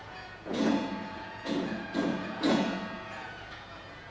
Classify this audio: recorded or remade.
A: remade